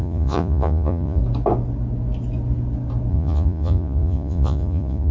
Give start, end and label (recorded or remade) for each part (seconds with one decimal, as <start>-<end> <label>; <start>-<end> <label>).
0.0-1.2 remade; 1.2-3.1 recorded; 3.1-5.1 remade